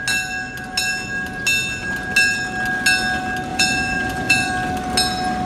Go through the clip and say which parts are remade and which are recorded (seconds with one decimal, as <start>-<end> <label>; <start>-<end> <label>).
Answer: 0.0-3.5 recorded; 3.5-4.5 remade; 4.5-5.5 recorded